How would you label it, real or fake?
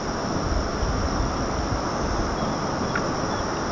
real